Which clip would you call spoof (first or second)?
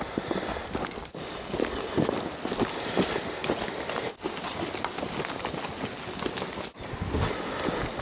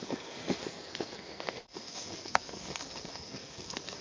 second